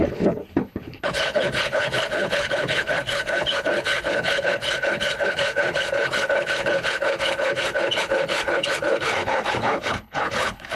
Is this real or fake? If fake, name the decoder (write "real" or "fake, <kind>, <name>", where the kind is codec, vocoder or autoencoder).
fake, codec, HILCodec